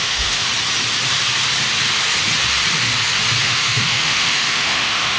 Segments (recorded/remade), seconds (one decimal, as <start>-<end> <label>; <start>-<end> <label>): 0.0-0.5 remade; 0.5-3.4 recorded; 3.4-5.2 remade